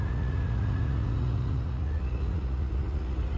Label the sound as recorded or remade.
remade